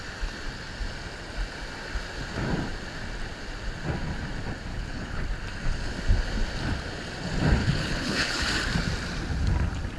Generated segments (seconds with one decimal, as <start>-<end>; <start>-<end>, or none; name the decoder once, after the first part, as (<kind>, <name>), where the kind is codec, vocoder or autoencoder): 4.7-5.2 (codec, HILCodec); 7.6-8.4